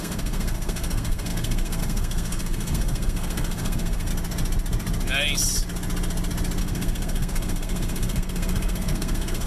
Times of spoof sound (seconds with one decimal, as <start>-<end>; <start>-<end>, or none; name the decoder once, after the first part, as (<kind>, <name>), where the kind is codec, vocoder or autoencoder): 0.0-4.1 (codec, SNAC); 6.6-9.5